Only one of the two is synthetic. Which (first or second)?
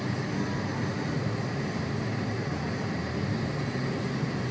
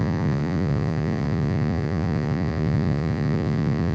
second